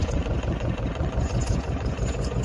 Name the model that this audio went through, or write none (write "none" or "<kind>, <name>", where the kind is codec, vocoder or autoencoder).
vocoder, Vocos